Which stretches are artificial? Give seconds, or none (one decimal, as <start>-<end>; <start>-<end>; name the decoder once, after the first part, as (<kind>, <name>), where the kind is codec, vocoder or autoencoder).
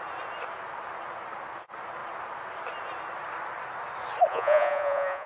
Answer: 4.3-5.3 (vocoder, Vocos)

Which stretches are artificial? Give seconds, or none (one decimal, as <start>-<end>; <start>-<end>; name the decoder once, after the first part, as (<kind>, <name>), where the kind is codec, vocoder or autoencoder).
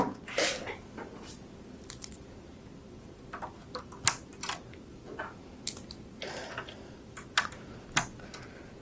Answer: none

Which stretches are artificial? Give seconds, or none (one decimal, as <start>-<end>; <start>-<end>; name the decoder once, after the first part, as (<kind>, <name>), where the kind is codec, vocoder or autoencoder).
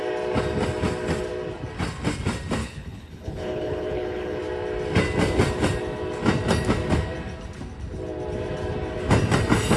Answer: 2.6-4.4 (codec, HILCodec)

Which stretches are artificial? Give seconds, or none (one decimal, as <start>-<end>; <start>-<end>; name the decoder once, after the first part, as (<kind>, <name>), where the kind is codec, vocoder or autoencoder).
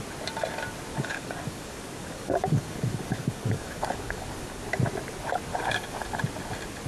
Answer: 0.9-4.6 (codec, DAC); 5.5-6.2